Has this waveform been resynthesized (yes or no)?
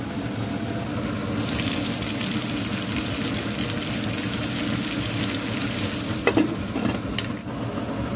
no